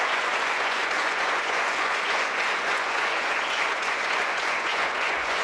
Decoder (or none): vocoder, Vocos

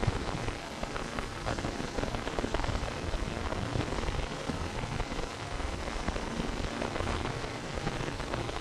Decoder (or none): codec, SNAC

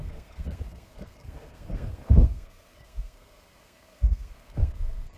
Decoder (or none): codec, SNAC